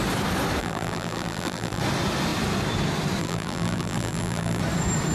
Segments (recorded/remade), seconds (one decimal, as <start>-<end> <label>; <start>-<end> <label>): 0.0-0.6 recorded; 0.6-1.8 remade; 1.8-3.2 recorded; 3.2-4.6 remade; 4.6-5.1 recorded